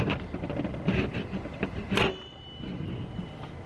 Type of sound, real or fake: real